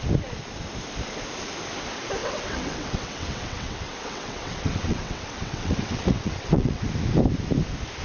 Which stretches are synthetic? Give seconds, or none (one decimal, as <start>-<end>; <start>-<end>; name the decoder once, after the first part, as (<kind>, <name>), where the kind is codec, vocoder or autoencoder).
2.2-6.8 (vocoder, WaveNeXt)